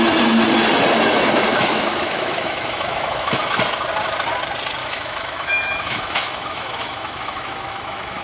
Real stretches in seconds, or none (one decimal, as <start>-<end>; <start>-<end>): 0.0-1.5; 3.6-4.8